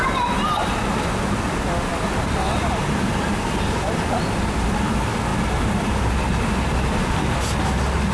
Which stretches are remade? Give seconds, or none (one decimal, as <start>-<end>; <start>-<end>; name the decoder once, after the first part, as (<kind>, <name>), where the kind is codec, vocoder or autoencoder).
none